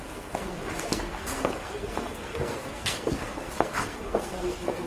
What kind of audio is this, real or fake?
fake